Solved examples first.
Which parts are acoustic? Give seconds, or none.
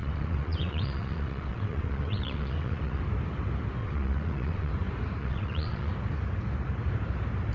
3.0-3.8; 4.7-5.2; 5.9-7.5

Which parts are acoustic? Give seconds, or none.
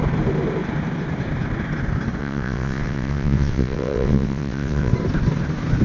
0.0-2.2; 4.9-5.8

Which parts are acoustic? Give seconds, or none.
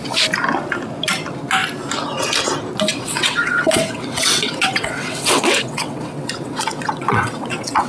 0.0-2.9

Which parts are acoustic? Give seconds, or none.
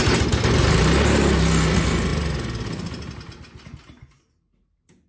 0.0-5.1